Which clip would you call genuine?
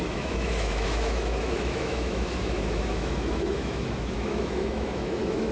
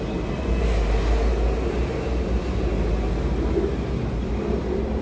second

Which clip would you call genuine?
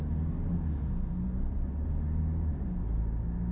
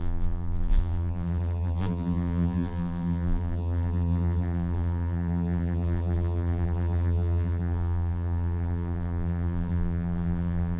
first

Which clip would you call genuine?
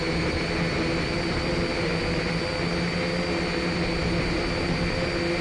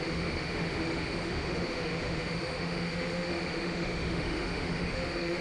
first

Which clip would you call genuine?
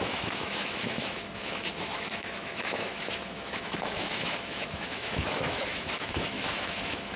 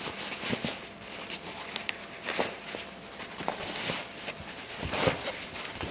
second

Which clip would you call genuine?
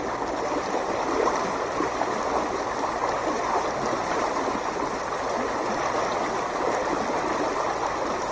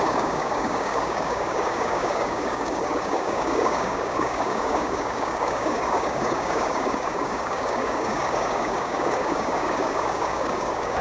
first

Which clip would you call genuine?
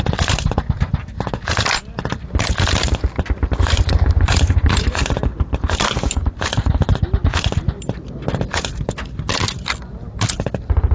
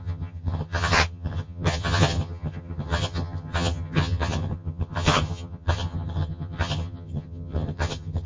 first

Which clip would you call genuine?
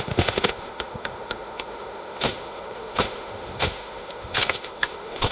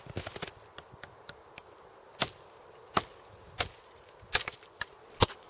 second